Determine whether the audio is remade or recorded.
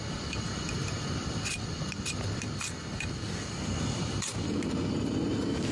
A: recorded